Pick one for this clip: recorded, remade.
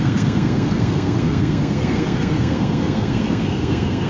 remade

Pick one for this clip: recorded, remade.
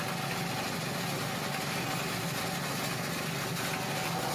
recorded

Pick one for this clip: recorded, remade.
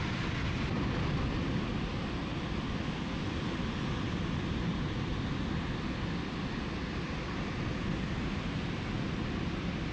recorded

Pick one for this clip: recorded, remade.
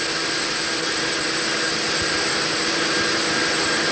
recorded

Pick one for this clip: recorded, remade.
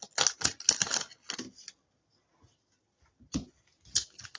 recorded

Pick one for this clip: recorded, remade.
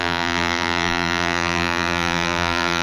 remade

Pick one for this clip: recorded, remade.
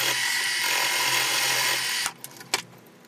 recorded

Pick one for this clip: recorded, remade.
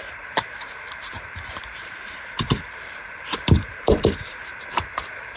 remade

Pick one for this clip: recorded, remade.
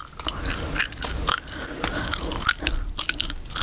recorded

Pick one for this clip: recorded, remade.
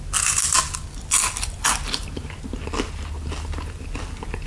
recorded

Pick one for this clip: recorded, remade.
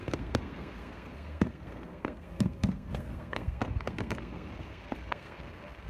remade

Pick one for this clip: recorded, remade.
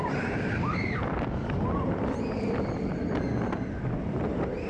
recorded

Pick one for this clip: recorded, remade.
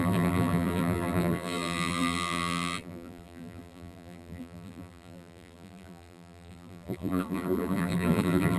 remade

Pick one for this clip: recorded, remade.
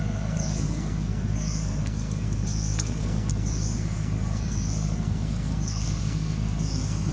remade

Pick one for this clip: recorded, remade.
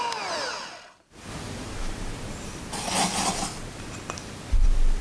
remade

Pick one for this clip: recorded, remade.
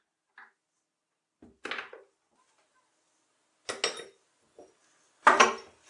recorded